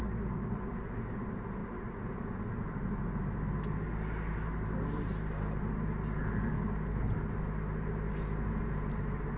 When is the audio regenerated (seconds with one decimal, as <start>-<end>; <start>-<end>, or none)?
none